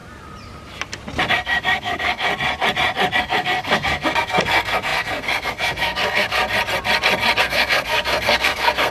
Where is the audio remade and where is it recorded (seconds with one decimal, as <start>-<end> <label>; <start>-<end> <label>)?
0.0-1.3 recorded; 1.3-2.3 remade; 2.3-3.2 recorded; 3.2-6.4 remade; 6.4-7.4 recorded; 7.4-8.9 remade